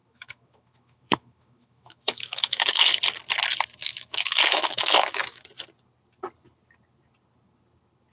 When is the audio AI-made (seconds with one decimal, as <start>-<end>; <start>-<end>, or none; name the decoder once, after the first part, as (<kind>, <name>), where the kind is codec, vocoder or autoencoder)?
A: 0.0-2.9 (autoencoder, DAC-VAE); 3.9-5.4

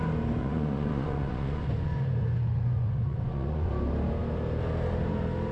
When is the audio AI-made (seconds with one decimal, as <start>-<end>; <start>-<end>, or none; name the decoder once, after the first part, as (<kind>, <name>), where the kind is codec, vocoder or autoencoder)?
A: 0.4-3.7 (vocoder, Vocos)

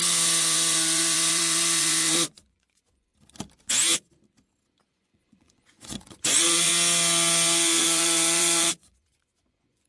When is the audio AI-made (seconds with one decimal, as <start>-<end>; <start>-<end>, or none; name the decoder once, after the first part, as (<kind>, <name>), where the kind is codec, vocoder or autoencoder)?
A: 0.0-3.1 (vocoder, Vocos); 4.9-6.7; 7.8-9.9